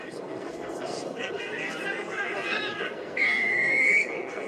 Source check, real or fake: fake